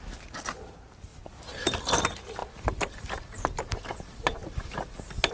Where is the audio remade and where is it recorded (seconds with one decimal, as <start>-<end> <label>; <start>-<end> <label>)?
0.0-1.1 recorded; 1.1-2.0 remade; 2.0-2.4 recorded; 2.4-3.7 remade; 3.7-5.3 recorded